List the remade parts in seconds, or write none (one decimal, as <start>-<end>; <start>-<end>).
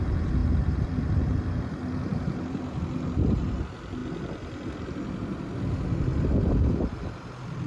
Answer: 0.4-1.4; 2.1-2.8